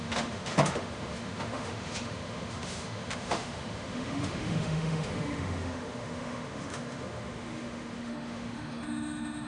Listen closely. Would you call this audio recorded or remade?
remade